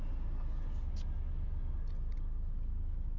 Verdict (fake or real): real